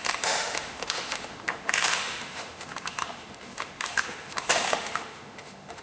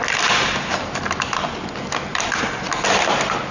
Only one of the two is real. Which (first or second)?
second